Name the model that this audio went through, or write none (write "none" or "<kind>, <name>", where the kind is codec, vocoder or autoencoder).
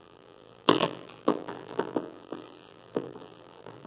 vocoder, BigVGAN v2